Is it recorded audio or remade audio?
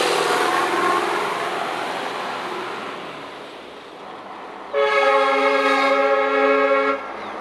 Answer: recorded